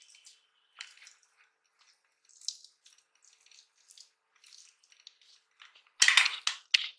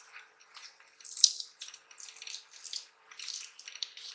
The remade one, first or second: second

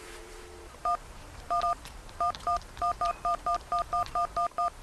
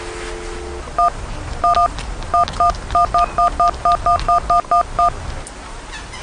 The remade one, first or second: first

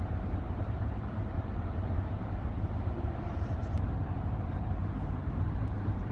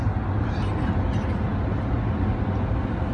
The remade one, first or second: first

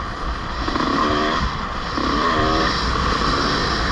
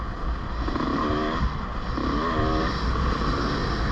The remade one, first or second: first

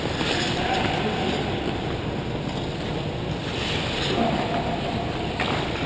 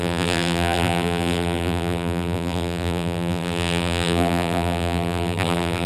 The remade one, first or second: second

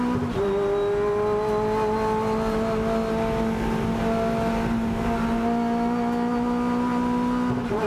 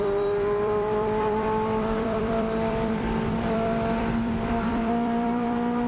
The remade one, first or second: second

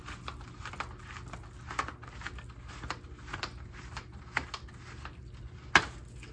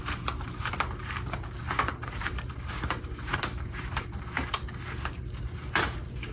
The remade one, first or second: second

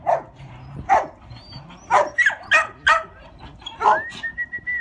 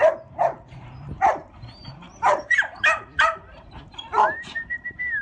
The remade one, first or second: second